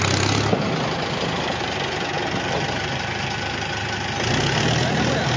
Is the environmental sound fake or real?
real